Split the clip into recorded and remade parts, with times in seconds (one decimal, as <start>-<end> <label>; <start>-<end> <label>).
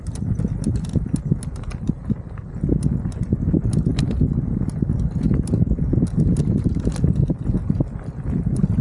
0.0-8.8 recorded